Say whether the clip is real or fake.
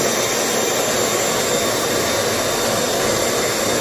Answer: real